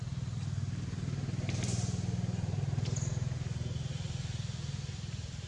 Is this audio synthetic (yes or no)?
no